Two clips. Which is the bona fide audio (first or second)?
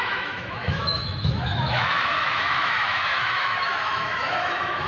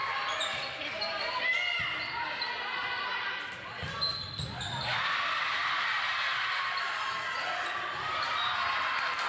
second